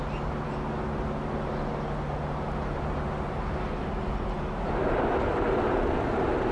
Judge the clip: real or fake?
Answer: real